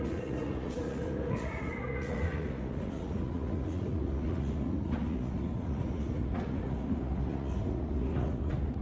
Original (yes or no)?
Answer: no